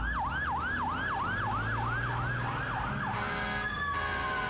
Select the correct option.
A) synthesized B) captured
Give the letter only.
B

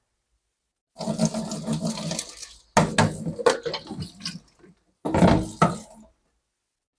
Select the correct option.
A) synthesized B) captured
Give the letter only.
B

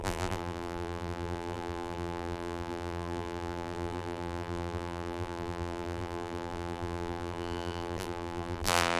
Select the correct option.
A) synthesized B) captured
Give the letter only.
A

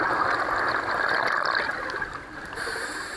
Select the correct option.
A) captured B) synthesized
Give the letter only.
A